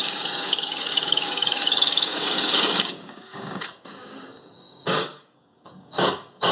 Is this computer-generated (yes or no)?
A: yes